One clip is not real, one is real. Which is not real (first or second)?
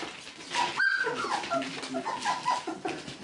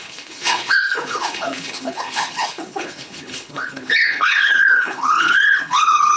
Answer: second